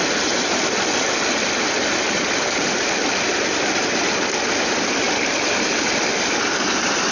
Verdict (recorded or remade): recorded